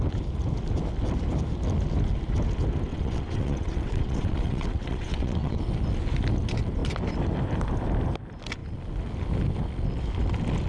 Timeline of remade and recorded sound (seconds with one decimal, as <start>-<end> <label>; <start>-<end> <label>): 0.0-2.9 recorded; 2.9-5.6 remade; 5.6-10.7 recorded